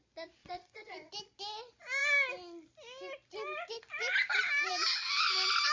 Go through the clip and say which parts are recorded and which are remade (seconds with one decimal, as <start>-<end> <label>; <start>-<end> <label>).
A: 0.0-0.4 recorded; 0.4-1.1 remade; 1.1-5.7 recorded